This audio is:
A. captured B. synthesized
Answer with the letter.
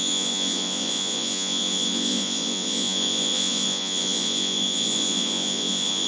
B